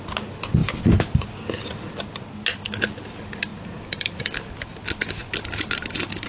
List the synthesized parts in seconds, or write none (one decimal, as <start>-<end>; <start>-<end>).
0.6-1.9; 3.5-4.7